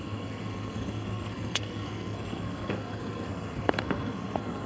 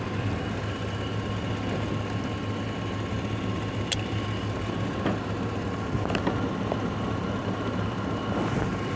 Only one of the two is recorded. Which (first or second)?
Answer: second